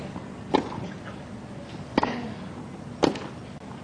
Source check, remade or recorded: recorded